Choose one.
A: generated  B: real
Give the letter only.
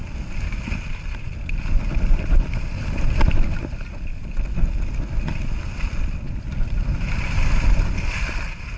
B